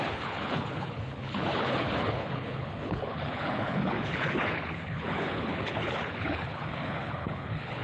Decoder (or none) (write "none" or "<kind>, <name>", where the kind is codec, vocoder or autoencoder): codec, HILCodec